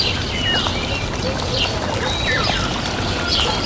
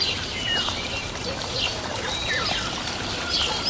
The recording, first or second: first